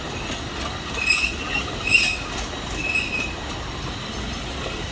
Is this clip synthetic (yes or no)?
no